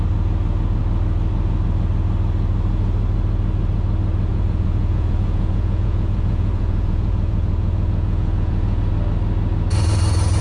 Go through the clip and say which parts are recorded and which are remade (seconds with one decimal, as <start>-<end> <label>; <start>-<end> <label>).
0.0-4.3 recorded; 4.3-8.9 remade; 8.9-10.4 recorded

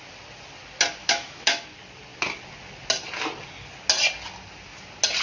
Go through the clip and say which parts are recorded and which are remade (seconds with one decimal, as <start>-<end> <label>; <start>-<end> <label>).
0.0-1.0 recorded; 1.0-1.6 remade; 1.6-5.2 recorded

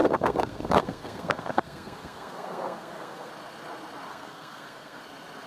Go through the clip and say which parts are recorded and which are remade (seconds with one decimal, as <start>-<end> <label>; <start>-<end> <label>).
0.0-3.3 remade; 3.3-4.1 recorded; 4.1-5.0 remade; 5.0-5.5 recorded

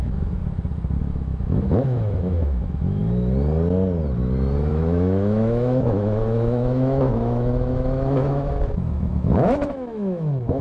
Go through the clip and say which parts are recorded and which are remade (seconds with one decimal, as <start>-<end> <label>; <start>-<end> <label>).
0.0-0.4 remade; 0.4-1.0 recorded; 1.0-3.0 remade; 3.0-4.7 recorded; 4.7-10.6 remade

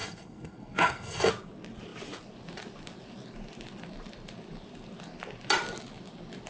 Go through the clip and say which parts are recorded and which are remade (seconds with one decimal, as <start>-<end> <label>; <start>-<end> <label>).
0.0-1.3 remade; 1.3-6.5 recorded